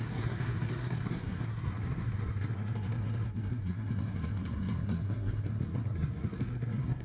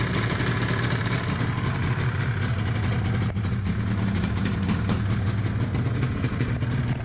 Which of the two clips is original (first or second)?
second